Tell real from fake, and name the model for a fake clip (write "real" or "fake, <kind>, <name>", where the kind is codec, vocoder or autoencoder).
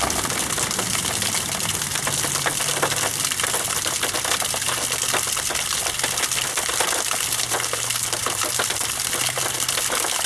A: real